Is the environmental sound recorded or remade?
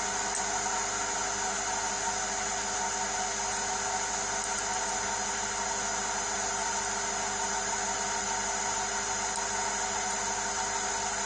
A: recorded